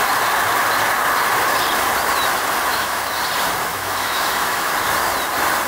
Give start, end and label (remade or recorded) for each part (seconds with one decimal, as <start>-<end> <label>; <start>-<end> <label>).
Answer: 0.0-2.7 recorded; 2.7-3.2 remade; 3.2-3.7 recorded; 3.7-4.7 remade; 4.7-5.7 recorded